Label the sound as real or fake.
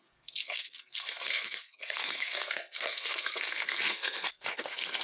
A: fake